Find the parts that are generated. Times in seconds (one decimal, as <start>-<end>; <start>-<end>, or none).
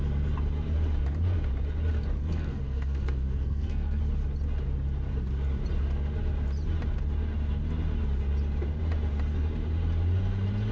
2.2-4.0